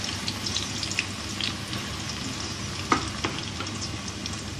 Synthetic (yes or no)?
no